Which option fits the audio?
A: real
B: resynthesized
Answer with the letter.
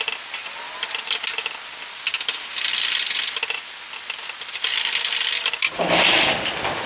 A